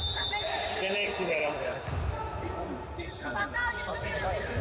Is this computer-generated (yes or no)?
no